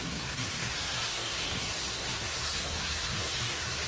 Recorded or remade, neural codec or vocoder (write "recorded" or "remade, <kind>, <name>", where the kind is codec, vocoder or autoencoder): remade, codec, SNAC